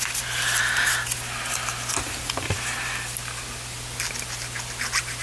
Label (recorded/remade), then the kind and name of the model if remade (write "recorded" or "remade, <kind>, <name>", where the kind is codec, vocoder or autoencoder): recorded